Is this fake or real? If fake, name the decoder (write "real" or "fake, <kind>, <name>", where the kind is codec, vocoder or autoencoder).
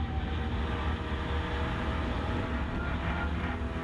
real